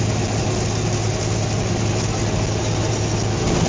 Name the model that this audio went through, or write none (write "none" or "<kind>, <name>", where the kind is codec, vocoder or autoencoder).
none